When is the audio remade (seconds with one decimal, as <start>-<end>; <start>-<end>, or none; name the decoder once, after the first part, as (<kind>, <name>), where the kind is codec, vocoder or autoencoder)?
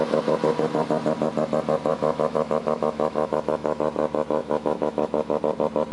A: 1.9-3.8 (autoencoder, DAC-VAE); 4.4-5.4